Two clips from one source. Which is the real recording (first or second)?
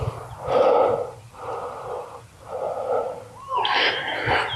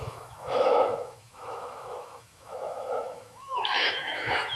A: first